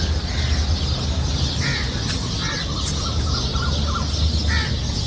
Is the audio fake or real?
real